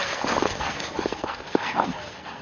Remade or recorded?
remade